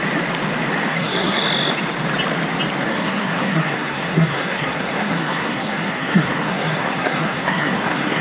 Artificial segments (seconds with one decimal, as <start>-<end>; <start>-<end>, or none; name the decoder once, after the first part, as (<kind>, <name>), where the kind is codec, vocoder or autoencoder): 0.9-1.4 (codec, SNAC); 2.9-8.2